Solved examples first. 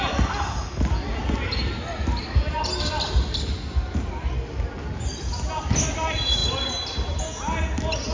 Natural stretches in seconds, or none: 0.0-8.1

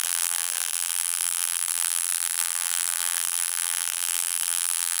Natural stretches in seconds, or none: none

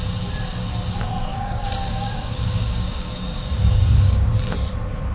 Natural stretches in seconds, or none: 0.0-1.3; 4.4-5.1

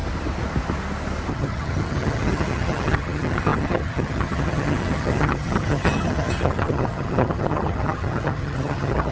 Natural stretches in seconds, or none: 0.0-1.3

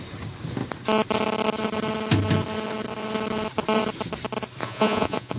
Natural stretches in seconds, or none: 0.0-4.6

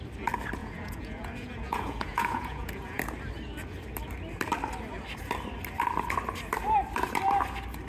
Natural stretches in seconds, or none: 0.0-0.6; 3.0-7.9

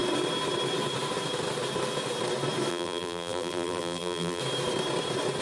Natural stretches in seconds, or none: 0.0-2.7; 4.4-5.4